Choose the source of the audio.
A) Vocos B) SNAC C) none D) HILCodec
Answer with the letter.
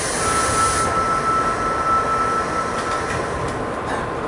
C